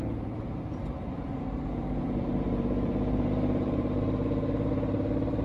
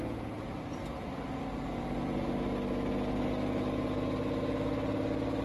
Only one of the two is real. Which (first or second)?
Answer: second